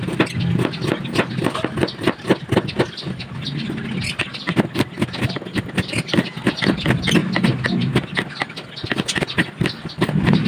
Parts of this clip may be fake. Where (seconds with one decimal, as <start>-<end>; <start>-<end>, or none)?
none